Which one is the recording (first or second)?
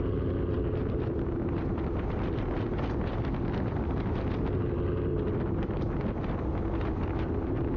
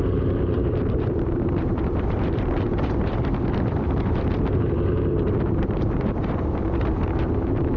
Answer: first